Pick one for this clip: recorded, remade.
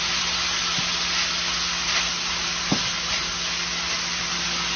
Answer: recorded